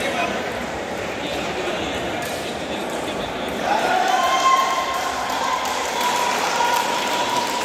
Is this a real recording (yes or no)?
no